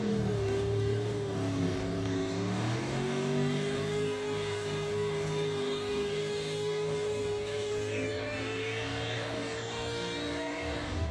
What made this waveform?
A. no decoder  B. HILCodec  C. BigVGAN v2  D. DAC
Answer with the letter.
D